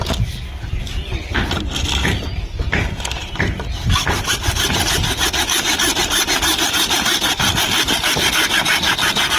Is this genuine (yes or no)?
yes